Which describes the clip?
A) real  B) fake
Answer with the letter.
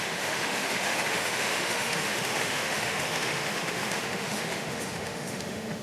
B